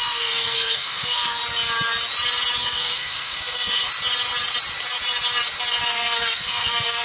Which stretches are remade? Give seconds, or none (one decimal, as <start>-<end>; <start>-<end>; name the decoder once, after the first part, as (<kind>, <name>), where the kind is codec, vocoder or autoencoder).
0.0-1.4 (codec, SNAC); 2.6-3.9; 5.9-7.0